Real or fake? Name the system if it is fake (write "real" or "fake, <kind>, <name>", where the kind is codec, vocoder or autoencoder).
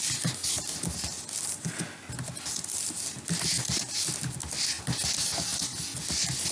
real